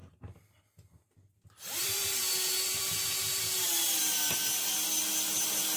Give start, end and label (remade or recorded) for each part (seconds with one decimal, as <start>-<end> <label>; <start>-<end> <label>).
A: 0.0-0.6 remade; 0.6-1.8 recorded; 1.8-4.0 remade; 4.0-5.8 recorded